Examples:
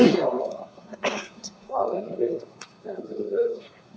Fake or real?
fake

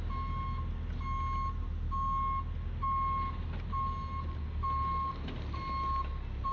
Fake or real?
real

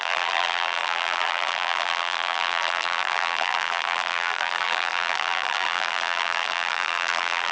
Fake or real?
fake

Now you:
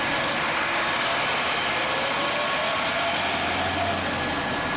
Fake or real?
real